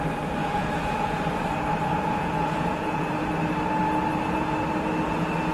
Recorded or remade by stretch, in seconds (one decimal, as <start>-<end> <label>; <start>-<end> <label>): 0.0-0.4 recorded; 0.4-1.2 remade; 1.2-1.9 recorded; 1.9-3.1 remade; 3.1-5.5 recorded